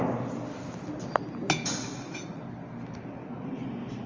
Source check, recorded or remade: recorded